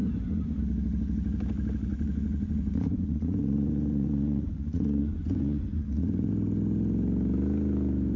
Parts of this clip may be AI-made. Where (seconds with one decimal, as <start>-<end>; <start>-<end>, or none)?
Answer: 1.9-6.3